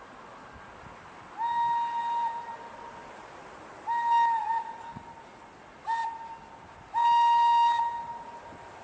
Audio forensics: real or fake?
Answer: real